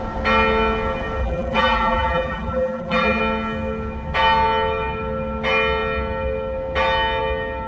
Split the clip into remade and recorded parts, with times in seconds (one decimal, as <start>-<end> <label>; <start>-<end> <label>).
0.0-1.2 recorded; 1.2-3.2 remade; 3.2-7.7 recorded